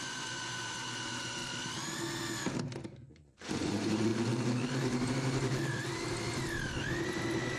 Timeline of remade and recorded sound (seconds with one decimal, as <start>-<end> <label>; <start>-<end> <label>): 0.0-1.4 remade; 1.4-3.1 recorded; 3.1-4.1 remade; 4.1-7.6 recorded